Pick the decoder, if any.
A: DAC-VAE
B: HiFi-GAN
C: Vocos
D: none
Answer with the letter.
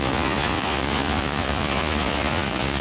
C